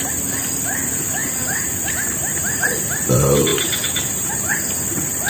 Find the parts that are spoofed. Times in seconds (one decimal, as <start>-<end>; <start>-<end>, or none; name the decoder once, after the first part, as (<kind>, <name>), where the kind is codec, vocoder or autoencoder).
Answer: 1.2-1.9 (vocoder, BigVGAN v2); 2.3-3.1; 3.5-4.7